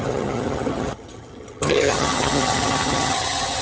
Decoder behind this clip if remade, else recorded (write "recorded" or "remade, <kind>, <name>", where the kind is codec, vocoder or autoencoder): remade, vocoder, HiFi-GAN